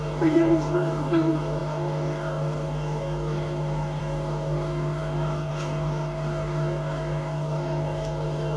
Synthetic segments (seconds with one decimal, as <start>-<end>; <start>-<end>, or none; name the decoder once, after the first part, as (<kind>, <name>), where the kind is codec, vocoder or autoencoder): 0.0-8.6 (codec, DAC)